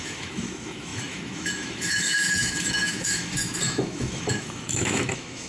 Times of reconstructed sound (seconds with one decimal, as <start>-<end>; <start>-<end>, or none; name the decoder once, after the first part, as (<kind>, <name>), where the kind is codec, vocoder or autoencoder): 0.0-5.5 (autoencoder, DAC-VAE)